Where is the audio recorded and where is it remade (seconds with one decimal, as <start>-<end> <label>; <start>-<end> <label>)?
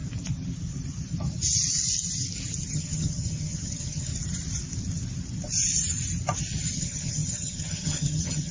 0.0-2.7 recorded; 2.7-4.1 remade; 4.1-6.7 recorded; 6.7-8.5 remade